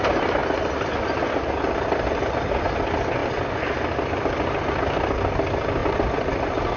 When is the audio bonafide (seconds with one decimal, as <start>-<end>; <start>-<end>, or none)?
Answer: 0.0-6.8